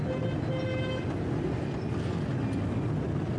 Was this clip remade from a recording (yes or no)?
no